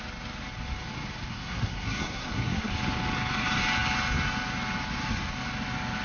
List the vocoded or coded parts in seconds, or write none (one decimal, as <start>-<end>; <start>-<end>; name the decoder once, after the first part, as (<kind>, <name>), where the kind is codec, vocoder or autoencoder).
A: 1.3-2.7 (codec, SNAC)